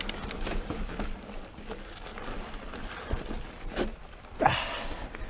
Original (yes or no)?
yes